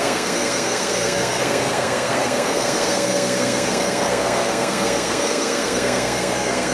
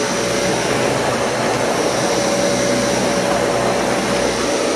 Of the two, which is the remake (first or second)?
first